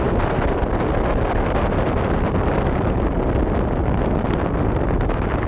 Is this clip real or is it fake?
real